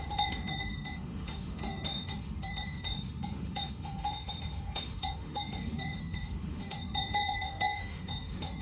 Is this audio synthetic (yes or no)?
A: yes